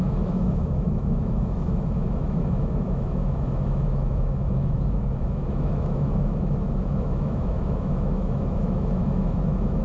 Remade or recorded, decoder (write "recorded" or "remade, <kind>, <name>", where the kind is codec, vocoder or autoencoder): remade, autoencoder, DAC-VAE